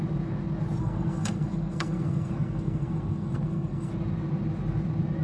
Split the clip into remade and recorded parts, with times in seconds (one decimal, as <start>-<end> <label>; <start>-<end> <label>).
0.0-0.8 recorded; 0.8-3.9 remade; 3.9-5.2 recorded